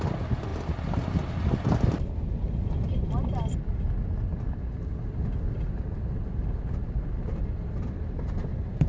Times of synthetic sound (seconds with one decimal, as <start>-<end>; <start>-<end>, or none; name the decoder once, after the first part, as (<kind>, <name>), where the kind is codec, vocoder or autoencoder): none